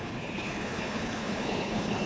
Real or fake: fake